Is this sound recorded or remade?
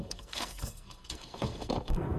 remade